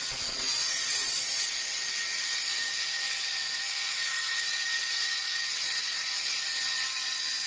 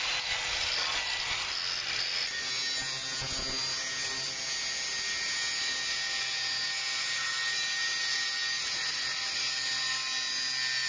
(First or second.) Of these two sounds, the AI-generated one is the first